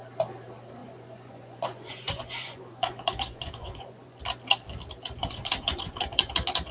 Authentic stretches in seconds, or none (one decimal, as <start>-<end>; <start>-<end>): 0.0-0.8; 4.2-5.2; 6.3-6.7